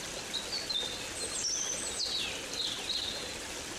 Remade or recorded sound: recorded